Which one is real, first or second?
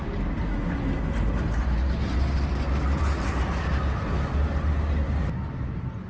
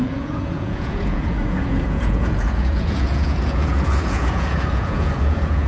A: first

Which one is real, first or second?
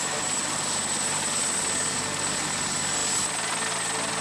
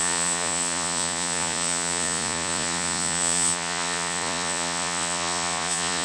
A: first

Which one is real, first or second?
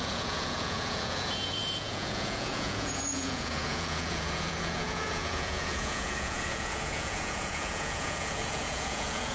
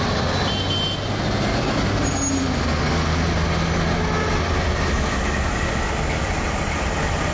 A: second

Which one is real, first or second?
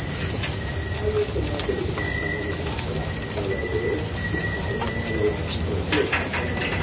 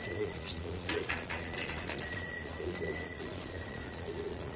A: first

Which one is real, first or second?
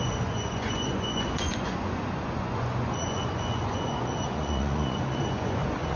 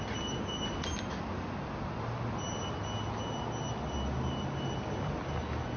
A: second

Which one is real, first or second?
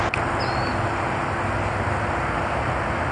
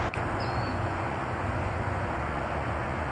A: first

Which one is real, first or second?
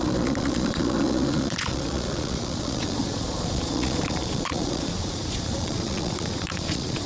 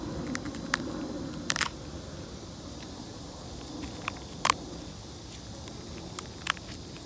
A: second